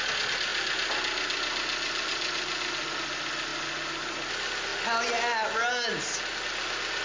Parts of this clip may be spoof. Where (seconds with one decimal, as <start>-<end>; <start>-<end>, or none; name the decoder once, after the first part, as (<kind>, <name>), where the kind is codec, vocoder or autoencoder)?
none